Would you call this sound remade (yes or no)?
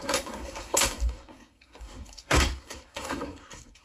yes